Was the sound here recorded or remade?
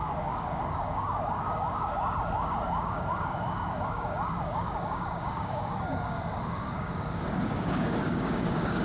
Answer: remade